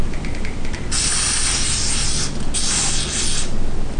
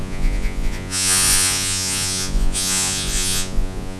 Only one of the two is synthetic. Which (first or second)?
second